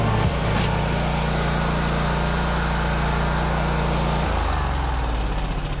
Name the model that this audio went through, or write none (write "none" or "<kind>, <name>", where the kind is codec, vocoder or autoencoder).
none